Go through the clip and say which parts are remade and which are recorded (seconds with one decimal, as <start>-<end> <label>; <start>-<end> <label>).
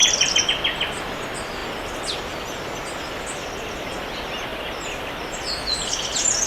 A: 0.0-0.8 remade; 0.8-4.5 recorded; 4.5-5.5 remade; 5.5-6.5 recorded